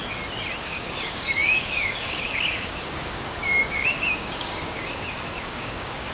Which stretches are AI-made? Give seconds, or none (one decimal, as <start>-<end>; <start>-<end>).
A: 0.6-6.1